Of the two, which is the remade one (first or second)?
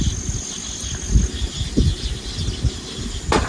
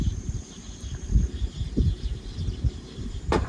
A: second